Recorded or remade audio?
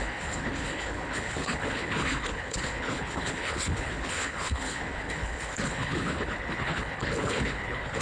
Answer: remade